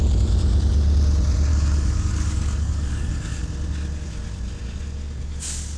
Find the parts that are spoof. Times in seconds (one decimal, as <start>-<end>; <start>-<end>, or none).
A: 1.5-3.4